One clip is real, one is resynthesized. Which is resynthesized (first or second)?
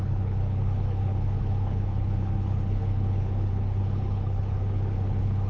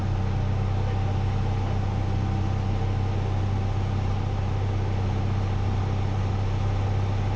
first